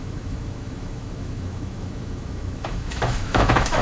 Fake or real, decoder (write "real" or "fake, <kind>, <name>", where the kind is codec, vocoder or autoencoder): fake, autoencoder, DAC-VAE